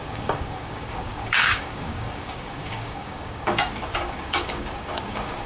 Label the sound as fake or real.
fake